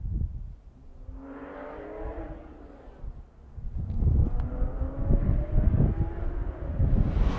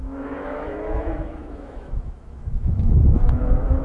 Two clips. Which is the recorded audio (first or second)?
first